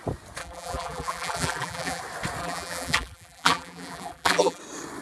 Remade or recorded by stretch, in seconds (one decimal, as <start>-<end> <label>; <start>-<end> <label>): 0.0-0.4 recorded; 0.4-2.0 remade; 2.0-2.4 recorded; 2.4-4.6 remade; 4.6-5.0 recorded